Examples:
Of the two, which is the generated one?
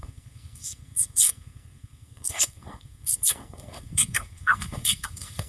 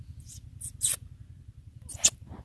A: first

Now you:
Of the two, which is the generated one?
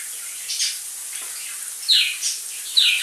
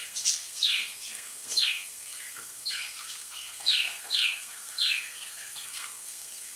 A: second